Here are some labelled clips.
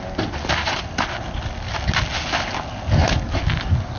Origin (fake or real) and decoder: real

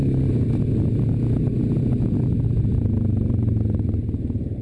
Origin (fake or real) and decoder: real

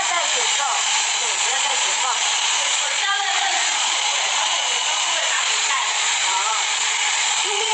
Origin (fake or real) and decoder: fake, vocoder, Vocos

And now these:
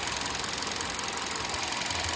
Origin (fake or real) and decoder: real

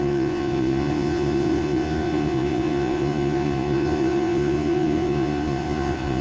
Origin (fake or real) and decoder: fake, vocoder, Vocos